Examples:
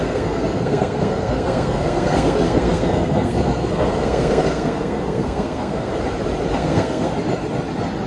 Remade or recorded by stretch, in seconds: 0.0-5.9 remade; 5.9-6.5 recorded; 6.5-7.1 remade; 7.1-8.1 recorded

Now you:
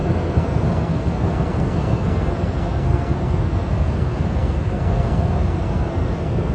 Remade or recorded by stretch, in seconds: 0.0-6.5 remade

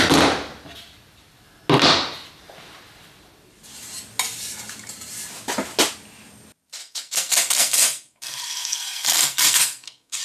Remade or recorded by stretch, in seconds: 0.0-6.8 recorded; 6.8-10.2 remade

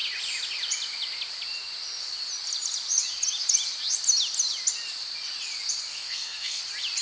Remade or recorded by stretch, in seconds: 0.0-5.9 recorded; 5.9-6.6 remade; 6.6-7.0 recorded

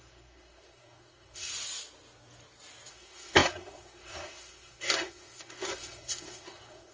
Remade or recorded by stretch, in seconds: 0.0-1.5 remade; 1.5-2.9 recorded; 2.9-6.9 remade